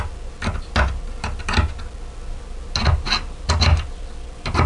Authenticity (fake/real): real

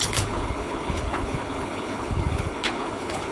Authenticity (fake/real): fake